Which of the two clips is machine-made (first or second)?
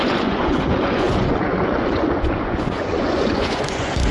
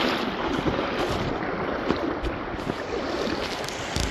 first